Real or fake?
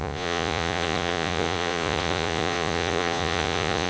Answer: fake